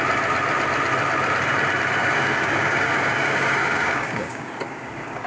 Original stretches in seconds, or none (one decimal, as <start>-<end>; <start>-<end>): 0.0-2.0